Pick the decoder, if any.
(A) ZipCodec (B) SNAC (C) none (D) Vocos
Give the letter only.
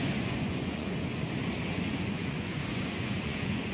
D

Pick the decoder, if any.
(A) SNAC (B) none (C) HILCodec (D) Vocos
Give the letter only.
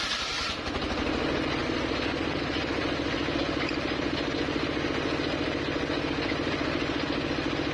B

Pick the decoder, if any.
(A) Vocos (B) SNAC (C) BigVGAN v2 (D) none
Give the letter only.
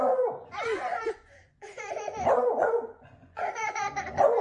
A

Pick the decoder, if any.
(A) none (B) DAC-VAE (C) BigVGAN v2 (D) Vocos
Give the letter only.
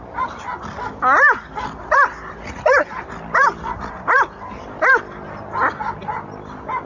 A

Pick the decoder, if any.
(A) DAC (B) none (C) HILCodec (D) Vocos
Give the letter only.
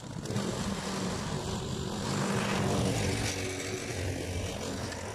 B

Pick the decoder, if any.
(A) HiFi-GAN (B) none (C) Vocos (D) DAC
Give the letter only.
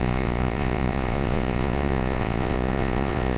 C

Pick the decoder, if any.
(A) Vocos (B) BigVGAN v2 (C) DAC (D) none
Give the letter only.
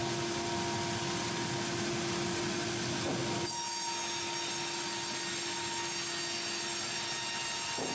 D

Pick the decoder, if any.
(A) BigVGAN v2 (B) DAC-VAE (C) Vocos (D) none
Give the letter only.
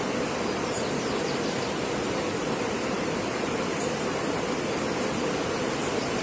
D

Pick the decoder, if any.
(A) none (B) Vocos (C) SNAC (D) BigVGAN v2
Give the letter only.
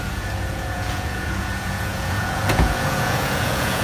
B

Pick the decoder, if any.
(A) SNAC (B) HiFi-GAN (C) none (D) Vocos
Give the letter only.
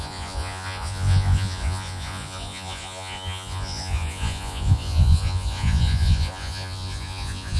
D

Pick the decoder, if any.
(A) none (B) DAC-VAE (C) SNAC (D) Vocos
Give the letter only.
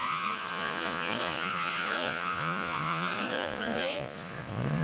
D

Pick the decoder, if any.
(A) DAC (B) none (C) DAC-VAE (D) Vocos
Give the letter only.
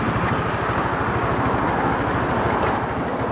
B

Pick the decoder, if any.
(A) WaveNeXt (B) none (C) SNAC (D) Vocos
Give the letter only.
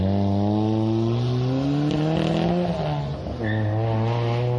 B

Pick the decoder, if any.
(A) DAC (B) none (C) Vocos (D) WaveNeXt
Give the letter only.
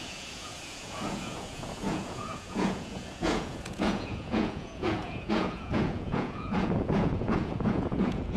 C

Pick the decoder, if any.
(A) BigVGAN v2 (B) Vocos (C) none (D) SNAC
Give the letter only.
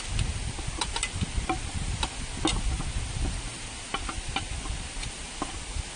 C